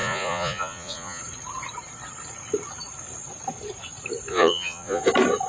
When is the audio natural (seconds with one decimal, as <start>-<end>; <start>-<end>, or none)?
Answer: 1.2-4.3; 5.0-5.5